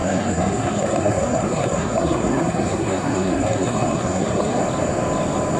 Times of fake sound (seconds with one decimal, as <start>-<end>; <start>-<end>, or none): 0.0-4.6